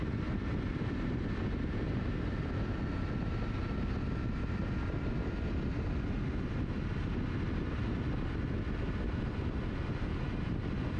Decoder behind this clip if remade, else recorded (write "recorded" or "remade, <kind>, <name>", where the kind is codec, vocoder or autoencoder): recorded